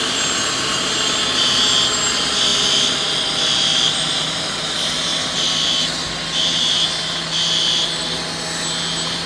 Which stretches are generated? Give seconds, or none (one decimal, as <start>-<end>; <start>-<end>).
none